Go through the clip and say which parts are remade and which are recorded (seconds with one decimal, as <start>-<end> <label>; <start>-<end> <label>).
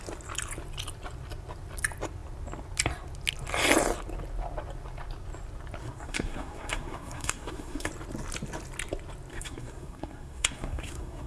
0.0-5.8 recorded; 5.8-7.9 remade; 7.9-9.3 recorded; 9.3-11.3 remade